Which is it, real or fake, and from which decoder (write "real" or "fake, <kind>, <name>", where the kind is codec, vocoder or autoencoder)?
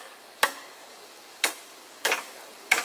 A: fake, codec, DAC